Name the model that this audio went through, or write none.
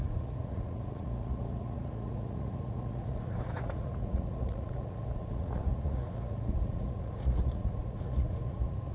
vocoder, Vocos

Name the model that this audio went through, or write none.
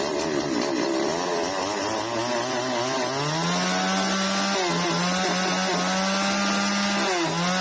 none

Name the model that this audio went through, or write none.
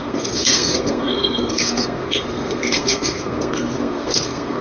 codec, SNAC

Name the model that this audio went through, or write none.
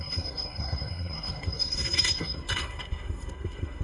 codec, SNAC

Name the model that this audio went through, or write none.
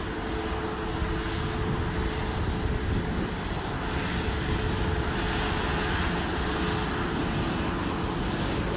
none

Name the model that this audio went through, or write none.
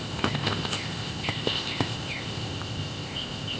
codec, ZipCodec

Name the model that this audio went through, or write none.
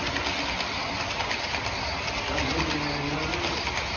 none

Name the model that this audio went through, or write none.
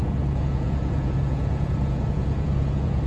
vocoder, Vocos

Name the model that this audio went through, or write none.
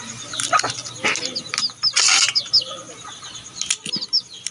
none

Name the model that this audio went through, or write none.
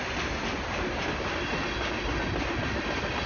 none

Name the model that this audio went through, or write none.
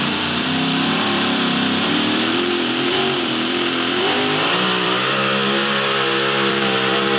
vocoder, BigVGAN v2